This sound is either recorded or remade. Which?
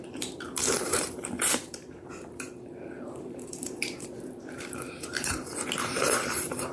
remade